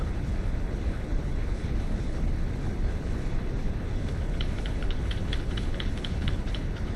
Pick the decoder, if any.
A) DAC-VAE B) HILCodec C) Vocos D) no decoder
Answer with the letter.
B